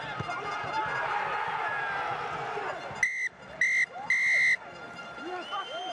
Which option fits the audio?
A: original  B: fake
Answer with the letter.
A